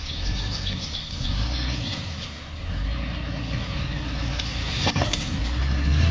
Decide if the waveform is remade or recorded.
remade